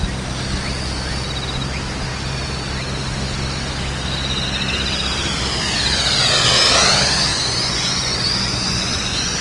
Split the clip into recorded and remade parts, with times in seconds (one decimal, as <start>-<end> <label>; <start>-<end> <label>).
0.0-7.3 recorded; 7.3-9.4 remade